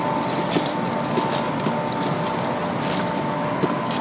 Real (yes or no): yes